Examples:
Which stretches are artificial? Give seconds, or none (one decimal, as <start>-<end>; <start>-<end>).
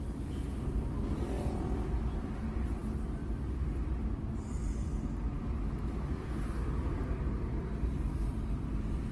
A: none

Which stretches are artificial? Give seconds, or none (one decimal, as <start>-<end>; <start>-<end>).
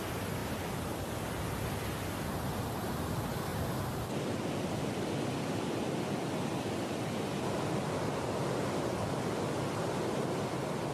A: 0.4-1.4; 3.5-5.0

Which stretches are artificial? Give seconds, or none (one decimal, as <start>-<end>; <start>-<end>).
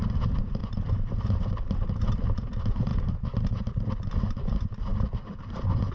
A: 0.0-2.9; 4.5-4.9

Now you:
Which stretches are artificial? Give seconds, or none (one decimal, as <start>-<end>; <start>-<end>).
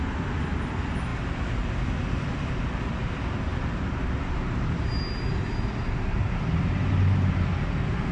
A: none